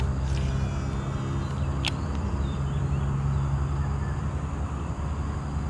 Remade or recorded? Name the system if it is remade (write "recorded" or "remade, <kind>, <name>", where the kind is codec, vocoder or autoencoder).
recorded